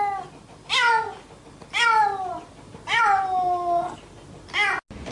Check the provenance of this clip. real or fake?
real